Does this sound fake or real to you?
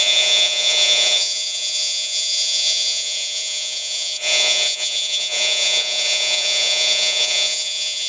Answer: fake